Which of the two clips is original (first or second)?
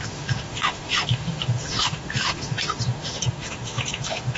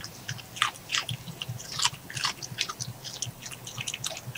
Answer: second